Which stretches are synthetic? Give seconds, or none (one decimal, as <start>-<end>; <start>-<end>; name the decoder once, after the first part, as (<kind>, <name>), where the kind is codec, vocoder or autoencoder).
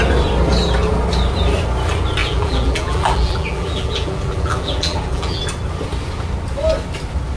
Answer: 2.2-5.4 (vocoder, BigVGAN v2)